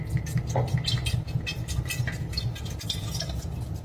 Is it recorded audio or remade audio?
recorded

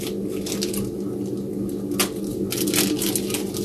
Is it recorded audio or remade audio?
recorded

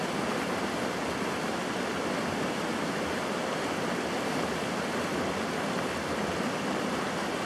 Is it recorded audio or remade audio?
recorded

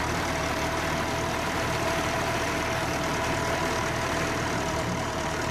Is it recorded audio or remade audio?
remade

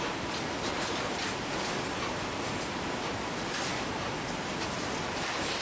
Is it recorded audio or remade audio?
remade